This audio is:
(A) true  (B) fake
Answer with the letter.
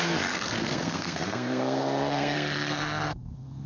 B